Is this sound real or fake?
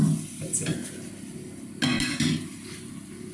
real